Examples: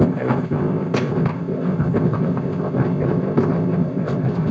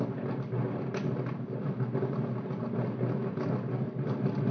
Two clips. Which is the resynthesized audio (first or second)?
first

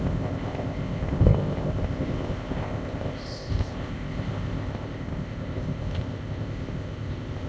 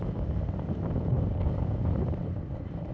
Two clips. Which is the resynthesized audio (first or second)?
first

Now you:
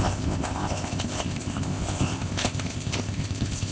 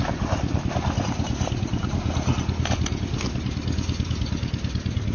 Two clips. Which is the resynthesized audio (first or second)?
first